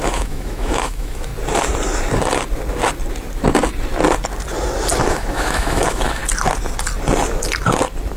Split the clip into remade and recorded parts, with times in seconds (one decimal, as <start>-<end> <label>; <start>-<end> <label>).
0.0-1.3 remade; 1.3-5.0 recorded; 5.0-6.2 remade; 6.2-8.2 recorded

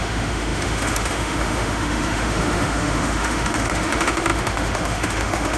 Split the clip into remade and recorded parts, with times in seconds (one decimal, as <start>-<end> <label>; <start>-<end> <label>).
0.0-5.6 remade